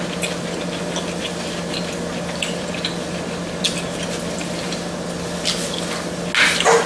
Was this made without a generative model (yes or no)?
yes